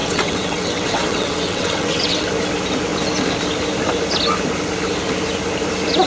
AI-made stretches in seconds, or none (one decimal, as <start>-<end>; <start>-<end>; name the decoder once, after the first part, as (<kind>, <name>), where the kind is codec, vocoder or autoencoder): 0.0-2.3 (vocoder, WaveNeXt)